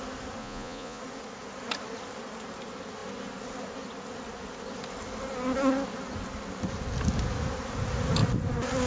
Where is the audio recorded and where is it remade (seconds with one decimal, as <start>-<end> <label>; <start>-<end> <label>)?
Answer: 0.0-0.4 recorded; 0.4-1.0 remade; 1.0-8.9 recorded